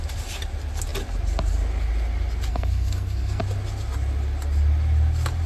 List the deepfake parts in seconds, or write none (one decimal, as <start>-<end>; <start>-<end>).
2.5-3.4